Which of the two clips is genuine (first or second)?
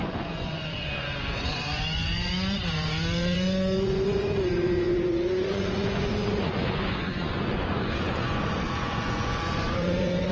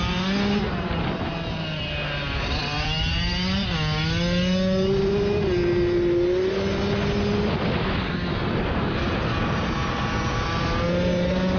second